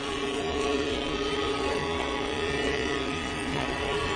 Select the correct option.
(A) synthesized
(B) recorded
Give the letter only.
A